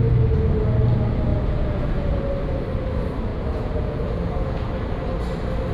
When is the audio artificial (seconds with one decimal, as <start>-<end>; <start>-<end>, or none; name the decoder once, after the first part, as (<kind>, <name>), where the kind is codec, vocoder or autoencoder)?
1.3-2.2 (vocoder, Vocos); 3.3-4.7